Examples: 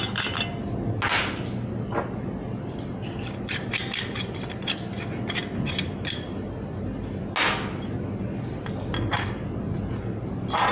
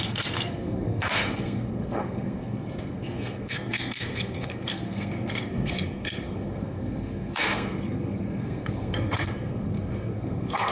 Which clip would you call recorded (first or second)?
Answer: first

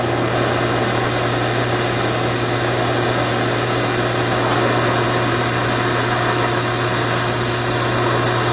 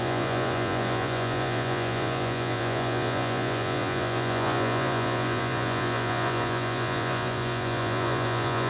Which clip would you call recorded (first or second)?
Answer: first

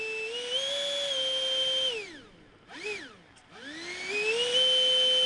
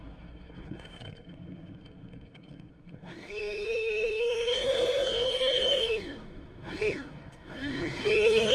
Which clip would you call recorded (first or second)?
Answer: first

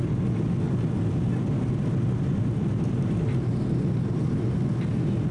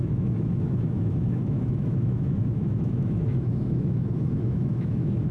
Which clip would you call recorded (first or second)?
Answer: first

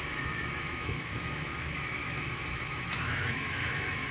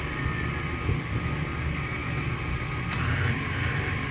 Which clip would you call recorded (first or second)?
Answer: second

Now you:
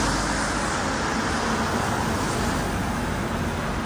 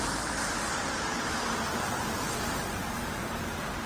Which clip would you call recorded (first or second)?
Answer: first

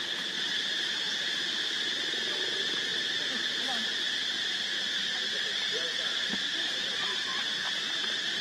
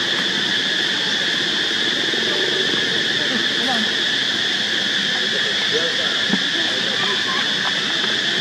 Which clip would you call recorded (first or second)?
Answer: second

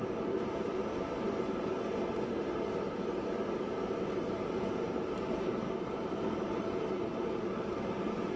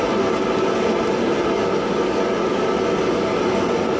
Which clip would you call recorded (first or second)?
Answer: second